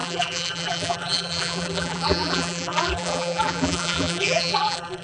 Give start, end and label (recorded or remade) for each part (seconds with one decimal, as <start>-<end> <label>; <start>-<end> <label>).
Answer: 0.0-5.0 remade